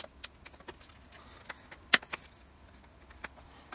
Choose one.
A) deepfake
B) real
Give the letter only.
B